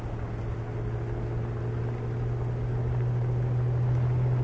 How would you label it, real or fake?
real